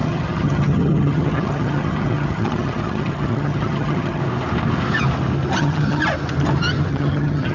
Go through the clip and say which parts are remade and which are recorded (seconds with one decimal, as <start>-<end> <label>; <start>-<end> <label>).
0.0-4.2 remade; 4.2-5.6 recorded; 5.6-6.0 remade; 6.0-6.9 recorded; 6.9-7.5 remade